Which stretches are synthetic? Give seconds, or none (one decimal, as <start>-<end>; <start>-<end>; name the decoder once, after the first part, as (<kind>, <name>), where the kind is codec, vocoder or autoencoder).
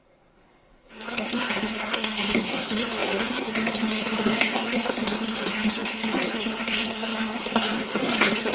0.0-8.5 (codec, SNAC)